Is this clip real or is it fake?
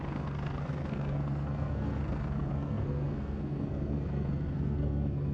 fake